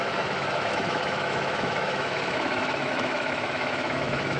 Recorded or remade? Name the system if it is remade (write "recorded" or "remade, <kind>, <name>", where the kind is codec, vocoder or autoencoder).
remade, autoencoder, DAC-VAE